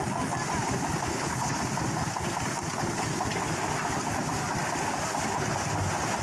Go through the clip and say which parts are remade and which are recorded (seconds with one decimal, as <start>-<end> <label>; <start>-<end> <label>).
0.0-1.1 recorded; 1.1-1.6 remade; 1.6-6.2 recorded